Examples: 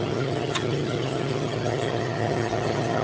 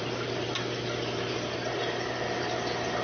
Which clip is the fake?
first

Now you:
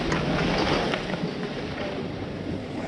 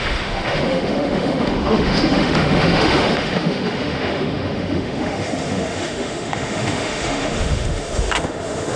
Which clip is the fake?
second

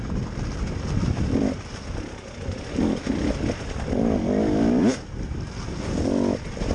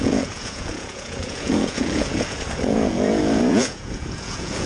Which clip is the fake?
second